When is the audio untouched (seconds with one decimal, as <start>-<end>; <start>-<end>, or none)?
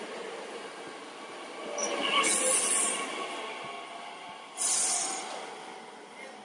0.0-6.4